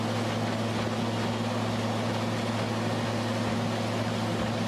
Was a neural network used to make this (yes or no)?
no